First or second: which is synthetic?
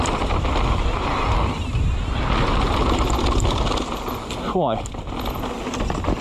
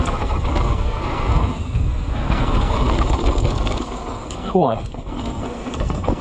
second